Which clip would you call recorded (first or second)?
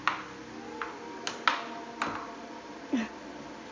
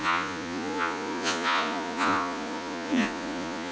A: first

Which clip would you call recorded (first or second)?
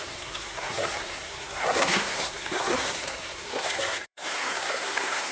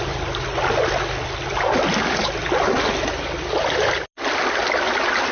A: second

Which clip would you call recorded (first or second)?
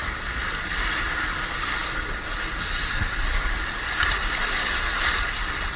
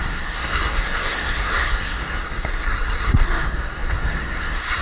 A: first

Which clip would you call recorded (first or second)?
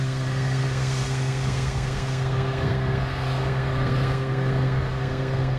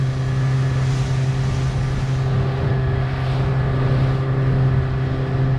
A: second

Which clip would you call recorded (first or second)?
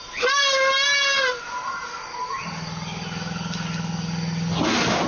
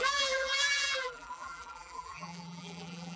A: first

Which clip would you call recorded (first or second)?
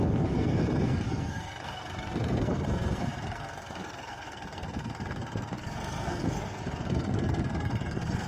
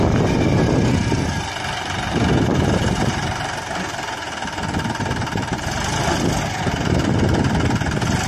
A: second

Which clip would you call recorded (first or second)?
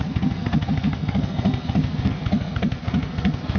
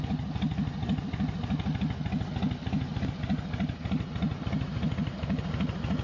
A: second